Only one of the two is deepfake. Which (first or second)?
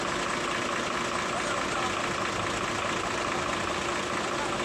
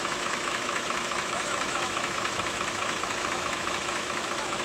second